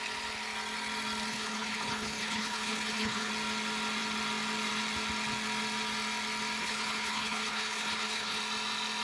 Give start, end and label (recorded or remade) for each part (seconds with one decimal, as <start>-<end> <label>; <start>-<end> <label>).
0.0-1.3 recorded; 1.3-3.3 remade; 3.3-6.6 recorded; 6.6-8.4 remade; 8.4-9.0 recorded